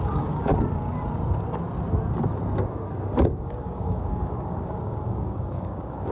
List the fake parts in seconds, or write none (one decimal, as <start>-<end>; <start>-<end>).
0.0-0.5; 2.7-6.1